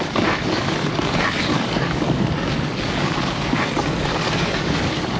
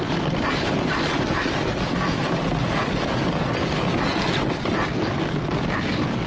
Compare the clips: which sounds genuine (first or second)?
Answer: second